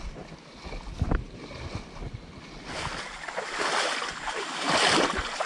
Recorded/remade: recorded